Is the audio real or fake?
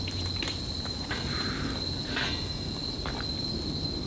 real